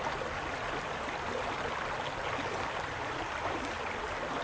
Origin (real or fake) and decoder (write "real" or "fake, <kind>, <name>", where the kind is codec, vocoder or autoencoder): real